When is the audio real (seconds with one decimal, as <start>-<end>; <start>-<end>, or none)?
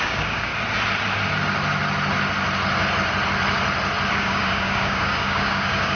0.5-4.1